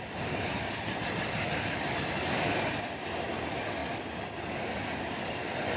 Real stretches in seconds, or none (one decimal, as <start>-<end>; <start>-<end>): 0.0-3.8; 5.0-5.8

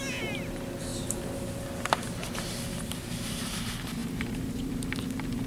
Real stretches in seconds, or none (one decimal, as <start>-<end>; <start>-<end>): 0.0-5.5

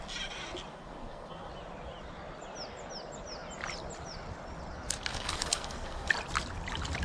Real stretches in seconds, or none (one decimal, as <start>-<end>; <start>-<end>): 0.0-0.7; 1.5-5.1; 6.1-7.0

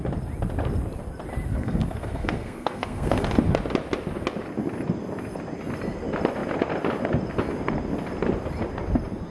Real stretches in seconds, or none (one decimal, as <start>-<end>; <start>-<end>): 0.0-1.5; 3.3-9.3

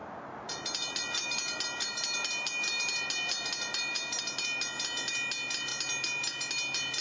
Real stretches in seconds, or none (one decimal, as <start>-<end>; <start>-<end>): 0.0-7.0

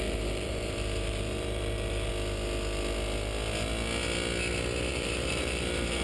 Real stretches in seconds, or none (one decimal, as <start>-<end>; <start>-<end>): 2.1-4.9